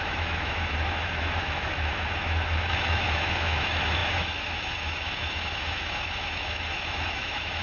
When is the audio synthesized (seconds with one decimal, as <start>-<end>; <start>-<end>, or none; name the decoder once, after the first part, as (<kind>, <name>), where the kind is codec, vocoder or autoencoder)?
0.0-7.6 (autoencoder, DAC-VAE)